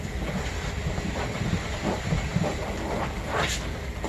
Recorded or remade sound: recorded